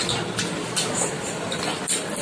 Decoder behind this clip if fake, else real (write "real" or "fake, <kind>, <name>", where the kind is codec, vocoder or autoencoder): fake, vocoder, BigVGAN v2